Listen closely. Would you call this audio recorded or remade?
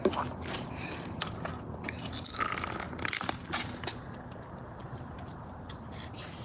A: recorded